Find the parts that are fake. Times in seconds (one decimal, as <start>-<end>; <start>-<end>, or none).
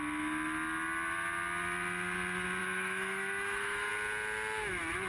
2.6-3.9